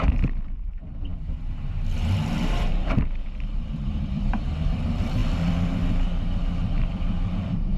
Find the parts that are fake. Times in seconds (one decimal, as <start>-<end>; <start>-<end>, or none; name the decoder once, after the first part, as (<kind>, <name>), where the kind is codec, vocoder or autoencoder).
0.0-5.2 (vocoder, BigVGAN v2); 7.3-7.8